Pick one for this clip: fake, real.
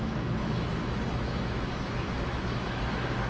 fake